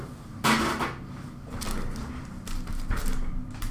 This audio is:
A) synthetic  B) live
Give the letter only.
B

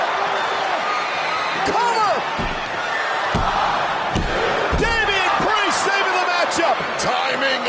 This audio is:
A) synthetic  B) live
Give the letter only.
B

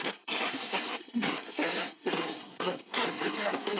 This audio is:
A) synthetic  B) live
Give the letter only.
A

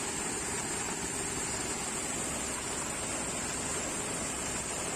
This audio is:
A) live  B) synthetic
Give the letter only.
A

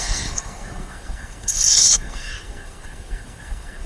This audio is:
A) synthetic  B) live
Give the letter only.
A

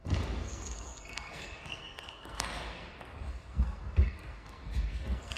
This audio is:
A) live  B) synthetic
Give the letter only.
B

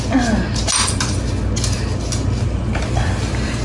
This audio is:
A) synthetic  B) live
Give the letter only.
B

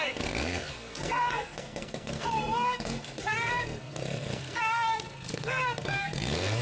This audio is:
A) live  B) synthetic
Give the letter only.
B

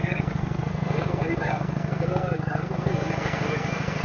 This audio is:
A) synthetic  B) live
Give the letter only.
A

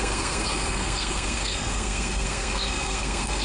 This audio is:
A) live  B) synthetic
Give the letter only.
B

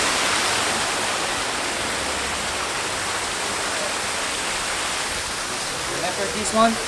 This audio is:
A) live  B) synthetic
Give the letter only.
A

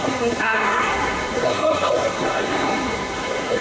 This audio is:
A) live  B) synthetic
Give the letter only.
B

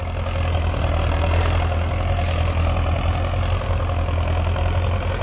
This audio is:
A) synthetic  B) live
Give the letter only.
B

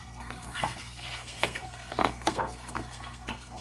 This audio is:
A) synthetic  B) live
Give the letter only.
A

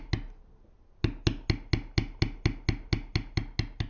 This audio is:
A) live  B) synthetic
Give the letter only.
A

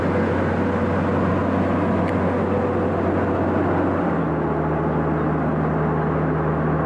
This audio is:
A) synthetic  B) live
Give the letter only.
B